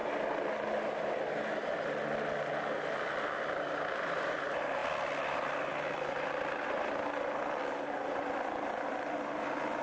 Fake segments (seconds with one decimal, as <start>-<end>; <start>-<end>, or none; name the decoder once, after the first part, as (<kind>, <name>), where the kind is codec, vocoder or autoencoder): none